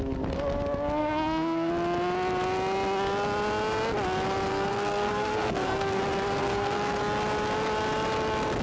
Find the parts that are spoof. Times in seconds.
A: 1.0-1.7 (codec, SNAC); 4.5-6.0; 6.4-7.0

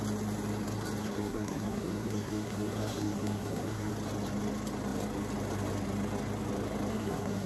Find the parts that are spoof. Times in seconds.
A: 1.0-3.9 (codec, SNAC); 6.9-7.5

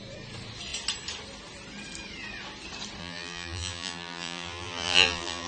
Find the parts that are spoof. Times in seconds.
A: 3.0-5.5 (vocoder, BigVGAN v2)